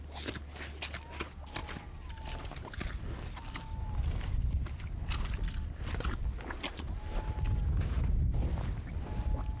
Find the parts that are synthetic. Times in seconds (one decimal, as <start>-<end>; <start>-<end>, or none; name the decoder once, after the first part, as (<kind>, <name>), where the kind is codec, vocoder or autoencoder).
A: 6.7-7.2 (vocoder, BigVGAN v2)